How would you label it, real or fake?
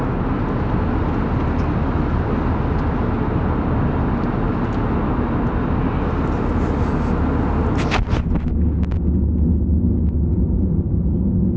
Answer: real